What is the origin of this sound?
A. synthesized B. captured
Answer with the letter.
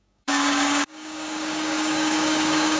A